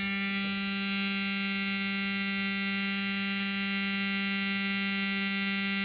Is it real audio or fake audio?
real